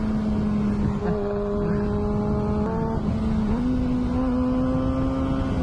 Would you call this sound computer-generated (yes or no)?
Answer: no